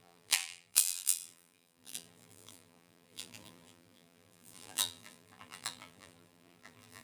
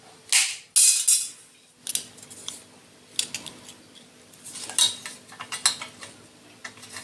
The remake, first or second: first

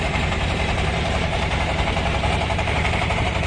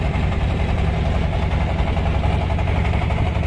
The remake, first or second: first